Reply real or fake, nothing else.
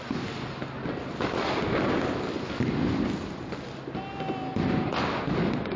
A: real